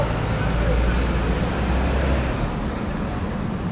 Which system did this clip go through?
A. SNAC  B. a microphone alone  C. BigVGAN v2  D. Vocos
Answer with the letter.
B